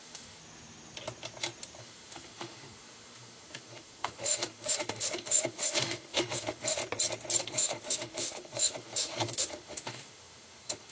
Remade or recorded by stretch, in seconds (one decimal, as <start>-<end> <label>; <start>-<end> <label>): 0.0-0.4 remade; 0.4-1.8 recorded; 1.8-6.8 remade; 6.8-7.4 recorded; 7.4-10.9 remade